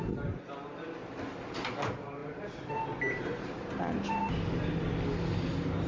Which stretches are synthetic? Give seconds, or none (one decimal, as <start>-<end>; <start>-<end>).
none